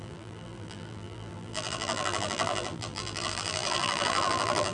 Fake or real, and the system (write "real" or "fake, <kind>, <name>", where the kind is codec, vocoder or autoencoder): fake, vocoder, BigVGAN v2